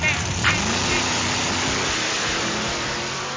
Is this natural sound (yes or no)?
yes